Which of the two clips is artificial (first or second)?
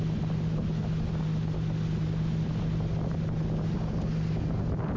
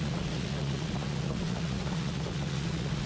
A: second